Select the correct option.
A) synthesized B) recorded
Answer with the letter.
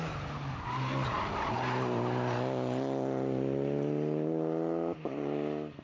B